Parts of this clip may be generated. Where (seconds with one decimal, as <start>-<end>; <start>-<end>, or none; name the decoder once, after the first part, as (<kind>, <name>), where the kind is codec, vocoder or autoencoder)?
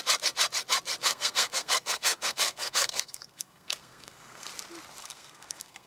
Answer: 1.0-4.5 (codec, SNAC); 5.0-5.9